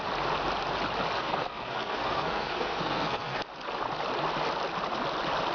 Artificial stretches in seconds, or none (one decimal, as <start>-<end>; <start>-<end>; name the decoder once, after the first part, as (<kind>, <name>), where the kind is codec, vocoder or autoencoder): 1.2-3.4 (codec, SNAC)